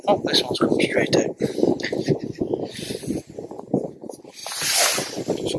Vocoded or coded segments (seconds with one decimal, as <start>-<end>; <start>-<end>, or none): 4.4-5.1